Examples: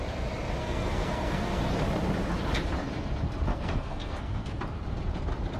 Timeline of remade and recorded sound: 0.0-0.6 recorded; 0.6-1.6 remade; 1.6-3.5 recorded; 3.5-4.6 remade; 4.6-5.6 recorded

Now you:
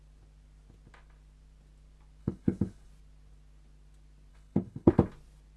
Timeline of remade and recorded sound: 0.0-2.2 recorded; 2.2-2.9 remade; 2.9-4.3 recorded; 4.3-4.9 remade; 4.9-5.6 recorded

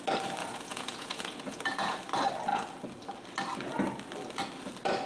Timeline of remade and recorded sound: 0.0-0.4 recorded; 0.4-2.0 remade; 2.0-5.1 recorded

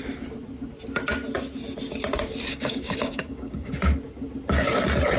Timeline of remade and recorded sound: 0.0-2.5 recorded; 2.5-3.7 remade; 3.7-5.2 recorded

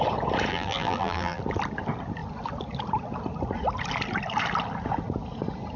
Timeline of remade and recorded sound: 0.0-0.5 recorded; 0.5-1.4 remade; 1.4-5.8 recorded

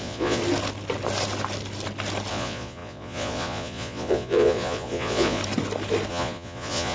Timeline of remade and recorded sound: 0.0-0.4 remade; 0.4-2.3 recorded; 2.3-5.4 remade; 5.4-6.1 recorded; 6.1-6.9 remade